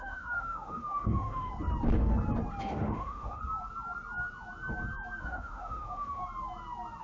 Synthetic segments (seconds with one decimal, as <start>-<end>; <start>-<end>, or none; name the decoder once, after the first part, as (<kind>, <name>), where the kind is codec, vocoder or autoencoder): 0.0-1.5 (autoencoder, DAC-VAE); 2.6-3.4; 5.2-6.2